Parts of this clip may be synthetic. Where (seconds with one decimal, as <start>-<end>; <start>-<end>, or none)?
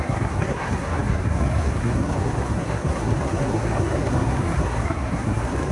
0.0-5.7